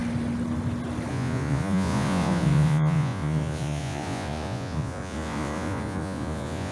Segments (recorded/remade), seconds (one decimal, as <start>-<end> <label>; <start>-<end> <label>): 0.0-1.1 recorded; 1.1-6.7 remade